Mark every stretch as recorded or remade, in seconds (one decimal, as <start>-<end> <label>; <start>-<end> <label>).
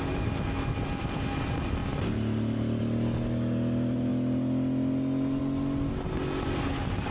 0.0-7.1 recorded